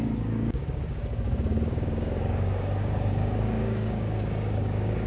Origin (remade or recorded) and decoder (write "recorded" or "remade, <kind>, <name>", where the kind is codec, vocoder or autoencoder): remade, codec, DAC